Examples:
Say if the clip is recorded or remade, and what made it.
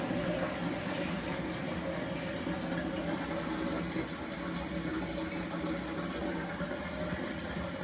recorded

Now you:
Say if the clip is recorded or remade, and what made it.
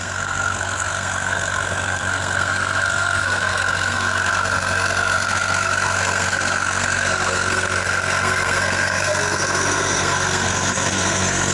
remade, codec, SNAC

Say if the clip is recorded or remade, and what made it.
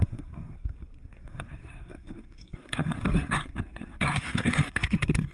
remade, codec, SNAC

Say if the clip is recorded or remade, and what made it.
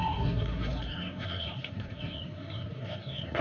remade, codec, SNAC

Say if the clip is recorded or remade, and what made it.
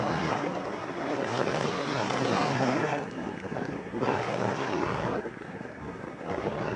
remade, codec, SNAC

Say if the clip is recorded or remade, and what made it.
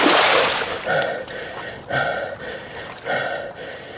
recorded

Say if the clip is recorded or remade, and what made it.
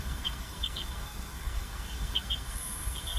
remade, codec, SNAC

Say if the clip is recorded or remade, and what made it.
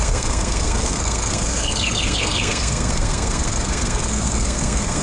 remade, codec, SNAC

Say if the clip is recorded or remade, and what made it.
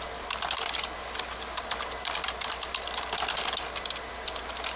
recorded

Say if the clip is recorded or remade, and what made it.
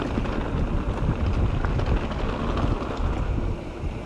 recorded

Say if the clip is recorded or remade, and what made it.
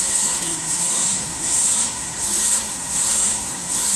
remade, codec, SNAC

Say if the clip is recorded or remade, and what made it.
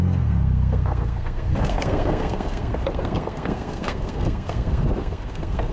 remade, codec, SNAC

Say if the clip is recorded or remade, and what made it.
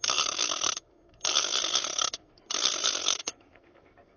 remade, codec, SNAC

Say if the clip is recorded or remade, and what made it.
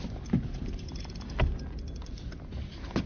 recorded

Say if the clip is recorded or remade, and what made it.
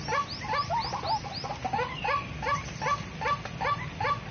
recorded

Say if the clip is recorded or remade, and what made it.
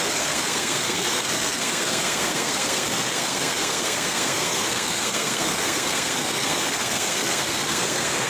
remade, codec, SNAC